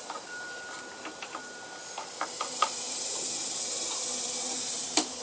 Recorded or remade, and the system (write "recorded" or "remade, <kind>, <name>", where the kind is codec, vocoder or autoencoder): recorded